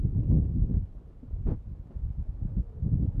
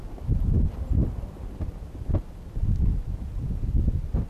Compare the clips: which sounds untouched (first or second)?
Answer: first